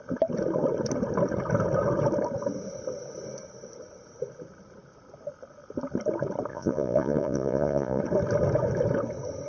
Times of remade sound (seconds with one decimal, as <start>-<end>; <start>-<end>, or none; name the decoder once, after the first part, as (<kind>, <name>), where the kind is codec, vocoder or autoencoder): 6.5-8.0 (vocoder, Vocos)